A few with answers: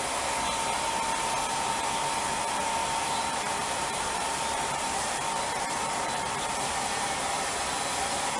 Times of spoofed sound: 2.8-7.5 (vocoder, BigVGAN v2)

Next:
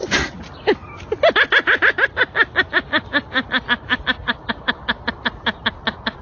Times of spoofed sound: none

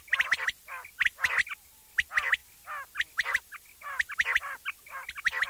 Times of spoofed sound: none

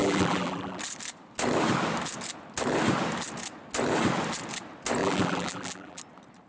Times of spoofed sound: 0.0-0.8 (vocoder, BigVGAN v2); 5.0-6.0

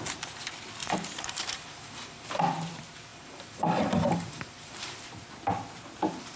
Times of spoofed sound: 0.8-2.4 (vocoder, BigVGAN v2); 3.1-5.0

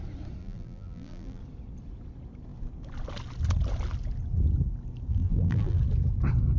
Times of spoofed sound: 0.4-1.4 (vocoder, BigVGAN v2); 5.1-5.8